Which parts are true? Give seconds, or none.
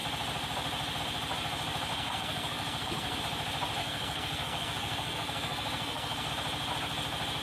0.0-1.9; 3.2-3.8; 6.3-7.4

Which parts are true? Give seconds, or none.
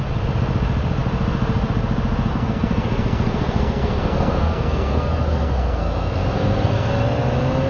0.0-2.3; 6.9-7.7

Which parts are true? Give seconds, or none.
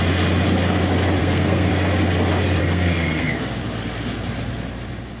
0.0-1.2; 1.7-2.6; 3.3-5.2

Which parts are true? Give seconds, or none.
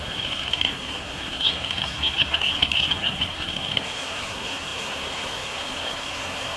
none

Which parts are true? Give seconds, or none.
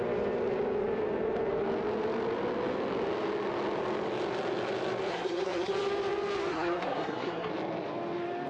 0.0-5.1; 5.7-6.5; 7.5-8.5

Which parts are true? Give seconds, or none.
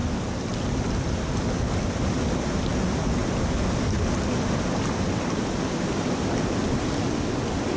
0.0-7.8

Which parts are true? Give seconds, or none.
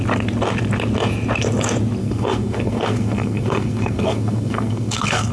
0.0-2.0